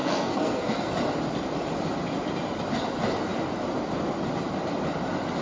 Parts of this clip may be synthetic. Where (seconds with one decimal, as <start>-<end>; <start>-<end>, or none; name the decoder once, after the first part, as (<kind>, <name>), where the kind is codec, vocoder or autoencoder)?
0.0-0.9 (codec, SNAC)